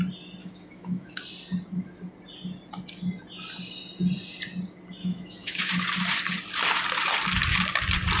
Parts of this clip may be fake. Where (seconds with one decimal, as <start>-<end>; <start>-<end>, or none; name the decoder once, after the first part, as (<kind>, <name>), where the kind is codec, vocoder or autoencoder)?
0.4-1.2 (autoencoder, DAC-VAE); 5.0-5.7